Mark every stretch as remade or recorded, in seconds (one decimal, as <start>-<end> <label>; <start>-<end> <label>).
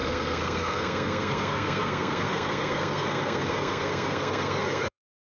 0.0-5.3 remade